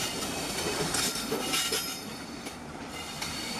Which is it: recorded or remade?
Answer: recorded